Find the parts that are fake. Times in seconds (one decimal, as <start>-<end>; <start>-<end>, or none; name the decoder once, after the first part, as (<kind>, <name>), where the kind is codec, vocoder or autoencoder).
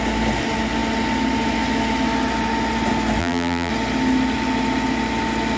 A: 3.2-3.7 (vocoder, BigVGAN v2)